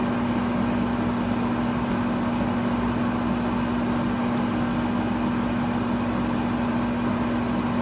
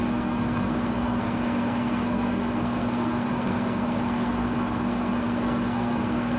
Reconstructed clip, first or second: second